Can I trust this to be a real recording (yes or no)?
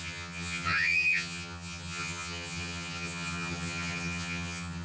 no